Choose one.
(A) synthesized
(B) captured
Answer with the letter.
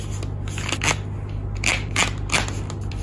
B